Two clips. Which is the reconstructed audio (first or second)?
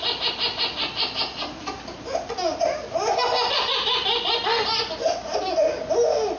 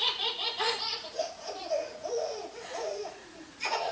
second